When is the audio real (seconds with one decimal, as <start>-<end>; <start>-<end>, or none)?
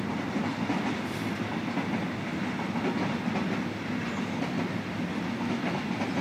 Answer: 0.0-0.5; 4.2-6.2